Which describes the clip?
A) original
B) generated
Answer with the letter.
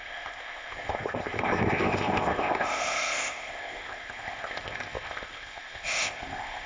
B